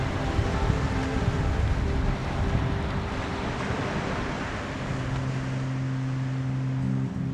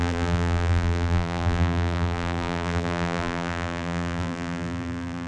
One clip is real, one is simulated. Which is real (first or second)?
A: first